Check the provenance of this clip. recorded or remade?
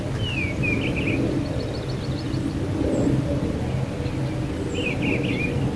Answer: recorded